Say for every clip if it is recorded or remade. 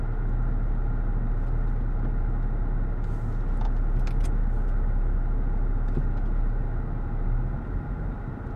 recorded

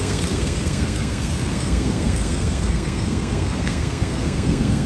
remade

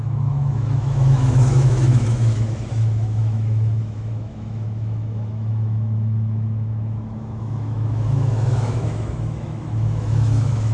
remade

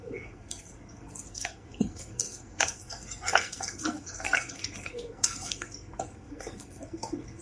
remade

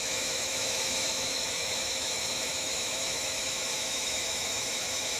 remade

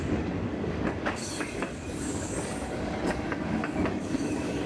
remade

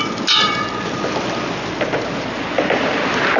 recorded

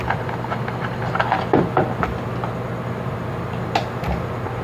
recorded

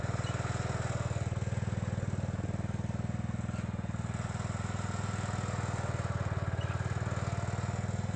recorded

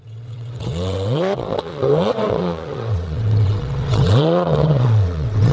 remade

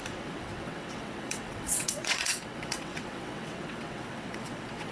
remade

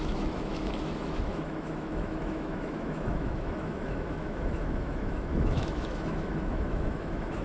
remade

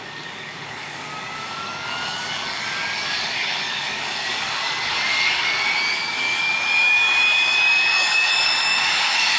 remade